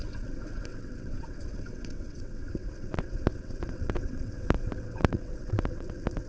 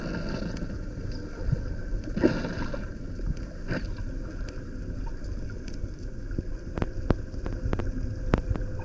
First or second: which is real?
second